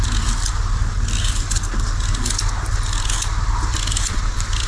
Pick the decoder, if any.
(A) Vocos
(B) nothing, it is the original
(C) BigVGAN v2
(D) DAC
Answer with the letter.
B